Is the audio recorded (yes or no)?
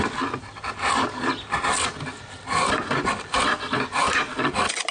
yes